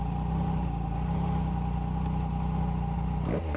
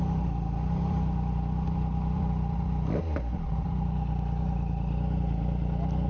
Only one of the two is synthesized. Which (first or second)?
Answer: second